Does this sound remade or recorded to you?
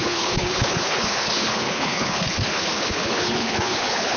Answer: remade